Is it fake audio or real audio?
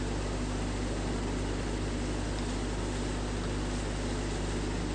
real